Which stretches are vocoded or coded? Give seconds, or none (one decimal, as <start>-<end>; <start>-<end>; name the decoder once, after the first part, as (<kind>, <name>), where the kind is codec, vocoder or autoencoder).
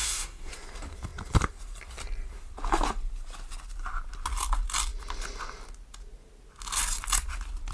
0.0-0.5 (codec, SNAC)